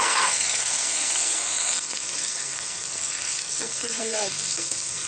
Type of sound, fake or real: fake